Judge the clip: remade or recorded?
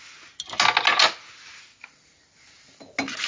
recorded